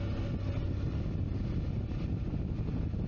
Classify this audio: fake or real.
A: real